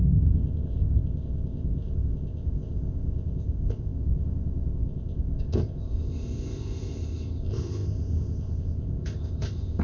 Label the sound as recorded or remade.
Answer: remade